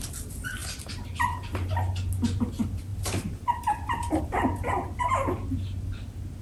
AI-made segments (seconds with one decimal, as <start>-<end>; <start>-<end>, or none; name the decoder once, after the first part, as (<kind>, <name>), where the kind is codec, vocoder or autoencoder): 2.9-4.2 (vocoder, BigVGAN v2)